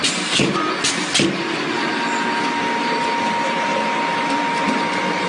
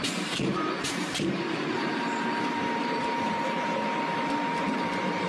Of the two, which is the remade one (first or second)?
second